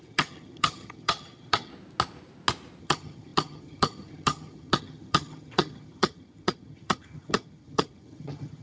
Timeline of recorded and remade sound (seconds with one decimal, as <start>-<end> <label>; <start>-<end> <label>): 0.0-1.7 remade; 1.7-2.8 recorded; 2.8-8.6 remade